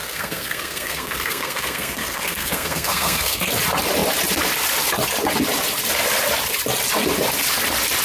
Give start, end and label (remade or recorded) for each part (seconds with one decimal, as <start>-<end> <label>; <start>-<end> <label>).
0.0-3.5 remade; 3.5-8.0 recorded